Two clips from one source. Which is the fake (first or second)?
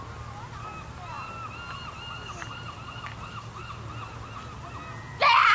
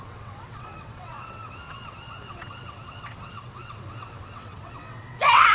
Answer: second